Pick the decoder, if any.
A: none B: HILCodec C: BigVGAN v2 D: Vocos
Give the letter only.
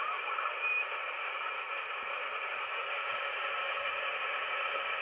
C